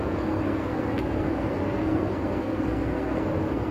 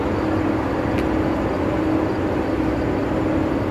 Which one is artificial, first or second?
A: first